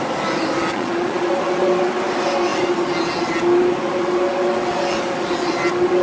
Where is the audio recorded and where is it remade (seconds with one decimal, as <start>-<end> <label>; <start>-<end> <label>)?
0.0-0.7 recorded; 0.7-1.3 remade; 1.3-6.0 recorded